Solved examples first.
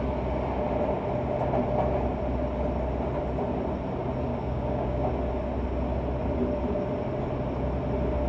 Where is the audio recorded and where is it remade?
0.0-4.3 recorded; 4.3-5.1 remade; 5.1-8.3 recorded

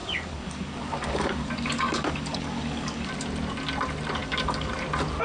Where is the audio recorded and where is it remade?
0.0-3.1 remade; 3.1-4.2 recorded; 4.2-4.7 remade; 4.7-5.2 recorded

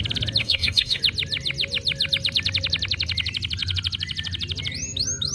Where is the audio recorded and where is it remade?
0.0-0.4 recorded; 0.4-1.0 remade; 1.0-5.3 recorded

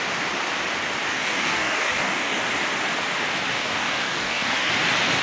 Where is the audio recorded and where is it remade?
0.0-1.1 recorded; 1.1-2.5 remade; 2.5-3.6 recorded; 3.6-4.7 remade; 4.7-5.2 recorded

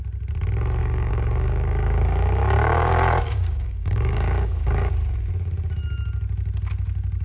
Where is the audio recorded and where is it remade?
0.0-0.8 recorded; 0.8-4.9 remade; 4.9-7.2 recorded

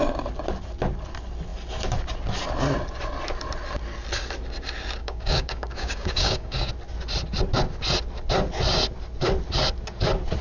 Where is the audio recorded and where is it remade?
0.0-5.0 recorded; 5.0-6.7 remade; 6.7-10.4 recorded

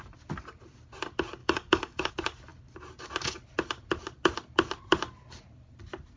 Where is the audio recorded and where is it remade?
0.0-1.4 recorded; 1.4-2.1 remade; 2.1-6.2 recorded